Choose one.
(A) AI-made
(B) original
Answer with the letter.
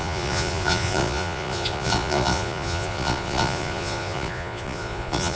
A